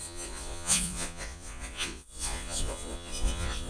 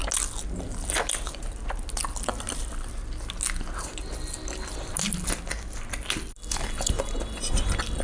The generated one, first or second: first